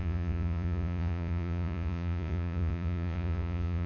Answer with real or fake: fake